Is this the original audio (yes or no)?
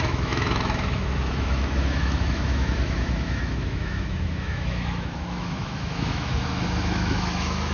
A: no